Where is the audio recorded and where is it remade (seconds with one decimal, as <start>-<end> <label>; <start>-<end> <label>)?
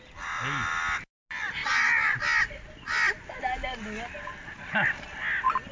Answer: 0.0-5.7 recorded